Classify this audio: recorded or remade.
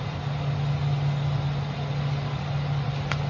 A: recorded